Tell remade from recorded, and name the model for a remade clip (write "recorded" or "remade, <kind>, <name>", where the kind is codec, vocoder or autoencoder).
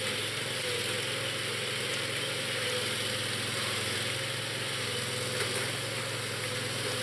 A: recorded